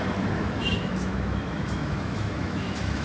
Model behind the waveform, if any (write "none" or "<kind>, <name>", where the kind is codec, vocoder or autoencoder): autoencoder, DAC-VAE